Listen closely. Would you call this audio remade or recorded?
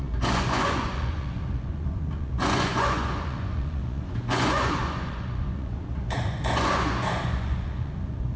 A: remade